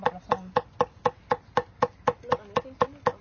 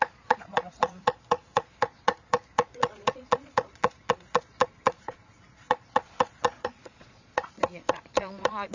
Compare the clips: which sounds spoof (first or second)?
second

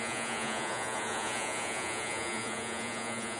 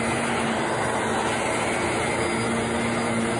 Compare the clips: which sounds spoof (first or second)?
first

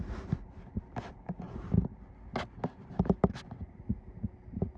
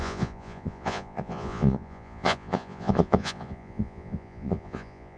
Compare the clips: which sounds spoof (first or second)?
second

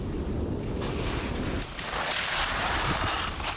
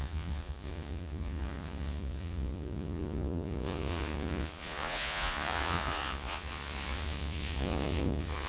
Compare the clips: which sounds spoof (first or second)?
second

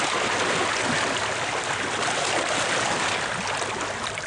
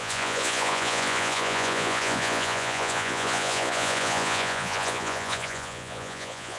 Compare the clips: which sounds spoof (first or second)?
second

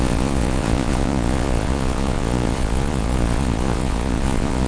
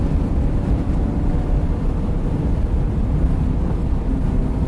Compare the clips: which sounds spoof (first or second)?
first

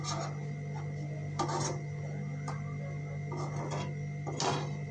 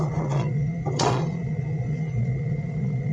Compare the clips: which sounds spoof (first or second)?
second